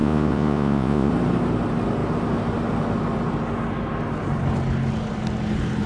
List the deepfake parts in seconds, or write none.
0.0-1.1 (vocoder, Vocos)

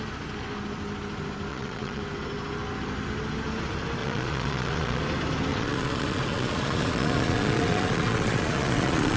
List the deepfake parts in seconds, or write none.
1.5-2.0 (vocoder, Vocos); 4.0-5.0; 5.5-9.2

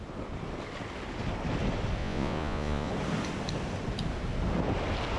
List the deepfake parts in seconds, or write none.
2.0-2.9 (vocoder, Vocos)

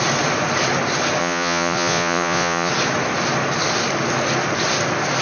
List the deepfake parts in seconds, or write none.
1.2-2.7 (vocoder, Vocos)

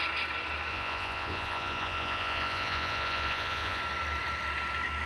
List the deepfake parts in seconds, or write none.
0.7-3.8 (vocoder, Vocos)

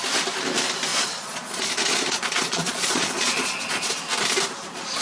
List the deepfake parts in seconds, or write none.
0.9-3.9 (vocoder, Vocos)

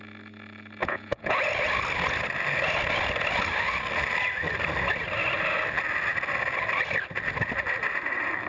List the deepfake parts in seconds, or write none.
0.8-1.4 (vocoder, Vocos)

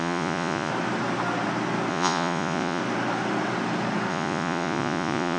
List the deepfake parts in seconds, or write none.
0.0-0.7 (vocoder, Vocos); 1.9-2.8; 4.1-5.4